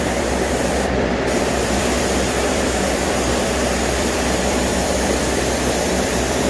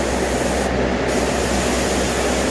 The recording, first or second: second